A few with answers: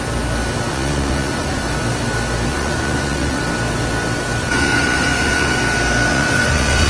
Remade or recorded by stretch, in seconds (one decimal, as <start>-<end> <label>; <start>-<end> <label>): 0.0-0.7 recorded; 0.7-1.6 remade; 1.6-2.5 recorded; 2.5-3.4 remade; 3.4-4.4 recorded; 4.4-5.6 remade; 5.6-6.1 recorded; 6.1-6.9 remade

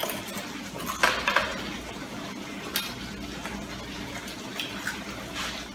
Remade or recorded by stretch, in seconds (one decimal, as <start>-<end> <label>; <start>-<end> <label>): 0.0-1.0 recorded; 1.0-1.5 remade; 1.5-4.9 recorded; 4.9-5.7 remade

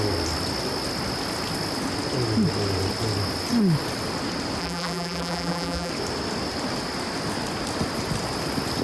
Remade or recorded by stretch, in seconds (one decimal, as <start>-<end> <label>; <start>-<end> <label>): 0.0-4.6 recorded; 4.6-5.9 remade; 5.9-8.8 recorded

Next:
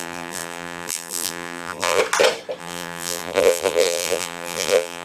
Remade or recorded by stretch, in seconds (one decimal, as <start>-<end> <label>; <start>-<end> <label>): 0.0-2.0 remade; 2.0-2.6 recorded; 2.6-5.0 remade

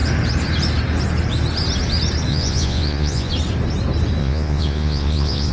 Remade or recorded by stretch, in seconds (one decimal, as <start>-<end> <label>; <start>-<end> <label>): 0.0-2.3 recorded; 2.3-3.3 remade; 3.3-4.2 recorded; 4.2-5.5 remade

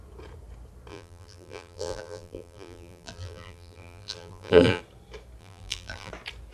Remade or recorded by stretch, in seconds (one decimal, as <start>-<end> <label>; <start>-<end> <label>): 0.0-0.9 recorded; 0.9-4.8 remade; 4.8-5.4 recorded; 5.4-6.1 remade; 6.1-6.5 recorded

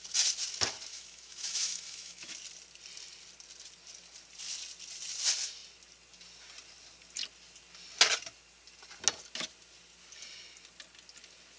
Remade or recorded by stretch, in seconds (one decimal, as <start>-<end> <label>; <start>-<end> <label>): 0.0-0.9 recorded; 0.9-2.3 remade; 2.3-11.6 recorded